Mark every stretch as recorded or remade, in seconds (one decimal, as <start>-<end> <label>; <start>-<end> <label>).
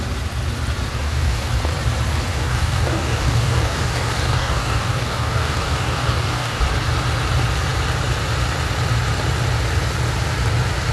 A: 0.0-0.9 recorded; 0.9-1.5 remade; 1.5-2.3 recorded; 2.3-6.6 remade; 6.6-10.9 recorded